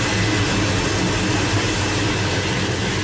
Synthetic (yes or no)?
no